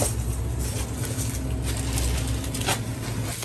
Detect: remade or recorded recorded